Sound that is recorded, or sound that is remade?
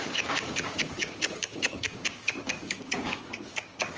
remade